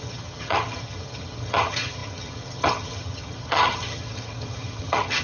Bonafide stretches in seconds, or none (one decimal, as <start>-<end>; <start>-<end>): none